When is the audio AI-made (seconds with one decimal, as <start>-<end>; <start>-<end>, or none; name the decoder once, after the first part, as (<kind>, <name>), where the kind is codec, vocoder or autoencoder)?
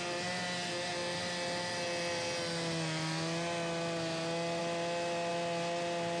none